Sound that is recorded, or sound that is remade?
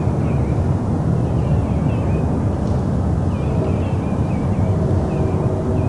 recorded